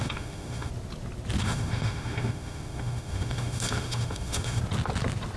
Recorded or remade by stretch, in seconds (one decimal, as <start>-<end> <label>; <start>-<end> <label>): 0.0-0.7 remade; 0.7-1.4 recorded; 1.4-4.6 remade; 4.6-5.4 recorded